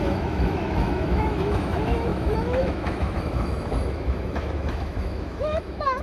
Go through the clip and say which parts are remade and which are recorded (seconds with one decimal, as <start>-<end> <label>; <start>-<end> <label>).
0.0-6.0 remade

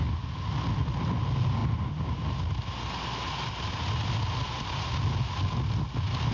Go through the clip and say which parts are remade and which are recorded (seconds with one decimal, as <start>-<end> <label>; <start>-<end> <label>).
0.0-6.3 recorded

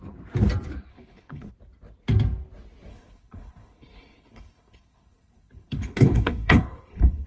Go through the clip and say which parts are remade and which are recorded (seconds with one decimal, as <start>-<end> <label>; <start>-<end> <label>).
0.0-0.9 recorded; 0.9-1.5 remade; 1.5-2.9 recorded; 2.9-7.3 remade

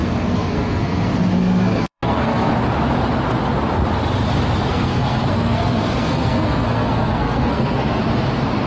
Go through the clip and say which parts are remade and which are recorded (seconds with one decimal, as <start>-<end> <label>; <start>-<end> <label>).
0.0-2.5 remade; 2.5-4.7 recorded; 4.7-8.0 remade; 8.0-8.7 recorded

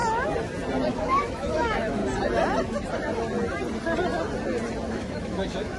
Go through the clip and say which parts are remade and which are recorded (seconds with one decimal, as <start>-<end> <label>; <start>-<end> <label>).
0.0-0.9 recorded; 0.9-2.0 remade; 2.0-4.9 recorded; 4.9-5.8 remade

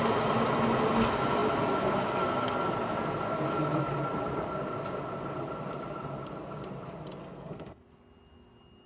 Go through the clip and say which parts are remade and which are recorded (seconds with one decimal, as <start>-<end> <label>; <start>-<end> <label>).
0.0-7.2 recorded; 7.2-7.8 remade; 7.8-8.9 recorded

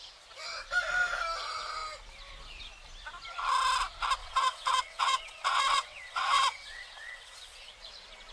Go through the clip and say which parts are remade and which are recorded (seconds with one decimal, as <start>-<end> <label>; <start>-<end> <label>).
0.0-4.2 recorded; 4.2-7.7 remade; 7.7-8.3 recorded